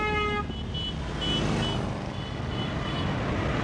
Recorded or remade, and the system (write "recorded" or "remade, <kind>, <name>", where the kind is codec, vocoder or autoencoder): recorded